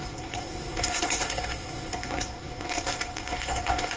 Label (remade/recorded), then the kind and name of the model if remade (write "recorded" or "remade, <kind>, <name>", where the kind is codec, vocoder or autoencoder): remade, codec, SNAC